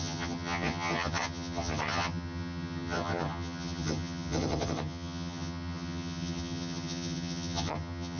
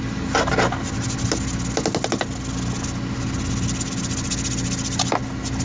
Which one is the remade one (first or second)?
first